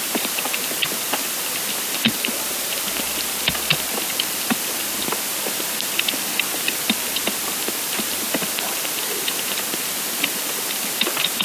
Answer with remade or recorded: recorded